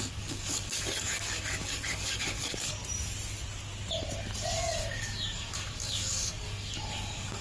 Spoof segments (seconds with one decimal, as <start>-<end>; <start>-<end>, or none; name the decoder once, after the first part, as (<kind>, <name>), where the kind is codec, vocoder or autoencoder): 0.0-2.8 (codec, DAC); 4.5-7.4